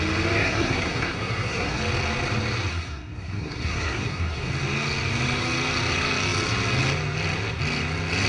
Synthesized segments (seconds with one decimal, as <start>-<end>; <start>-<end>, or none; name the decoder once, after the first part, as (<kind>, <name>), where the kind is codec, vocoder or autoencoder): 0.4-1.8 (codec, SNAC); 2.7-4.5